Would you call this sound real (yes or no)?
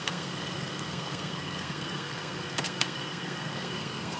no